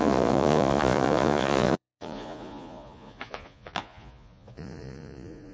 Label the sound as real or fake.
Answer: fake